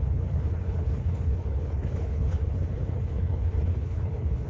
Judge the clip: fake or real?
fake